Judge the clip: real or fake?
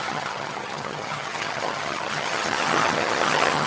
fake